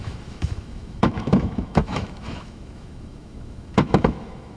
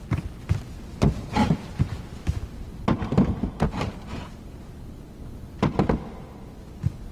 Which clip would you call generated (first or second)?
first